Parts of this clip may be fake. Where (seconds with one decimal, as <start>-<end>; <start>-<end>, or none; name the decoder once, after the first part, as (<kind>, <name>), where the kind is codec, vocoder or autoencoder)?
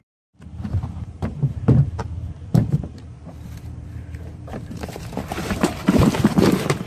0.5-2.0 (vocoder, BigVGAN v2); 2.5-5.6